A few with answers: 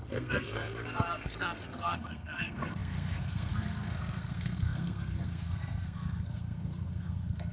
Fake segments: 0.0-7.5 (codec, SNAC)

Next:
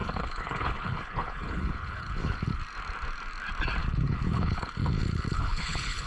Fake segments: 0.0-2.6 (codec, HILCodec); 3.8-6.1

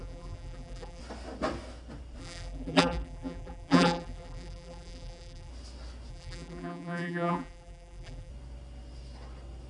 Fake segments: 0.0-1.0 (vocoder, BigVGAN v2); 2.2-5.5; 6.1-8.3